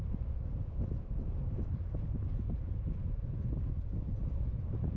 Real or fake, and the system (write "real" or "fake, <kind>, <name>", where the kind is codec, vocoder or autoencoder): real